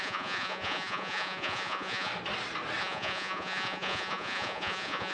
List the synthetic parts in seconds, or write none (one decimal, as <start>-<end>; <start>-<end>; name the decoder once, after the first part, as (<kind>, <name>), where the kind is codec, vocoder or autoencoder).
0.0-2.1 (vocoder, Vocos); 2.8-5.1